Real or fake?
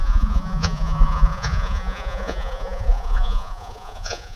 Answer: fake